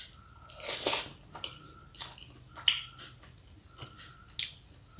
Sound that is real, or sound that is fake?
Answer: real